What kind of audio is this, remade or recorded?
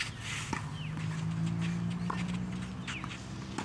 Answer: recorded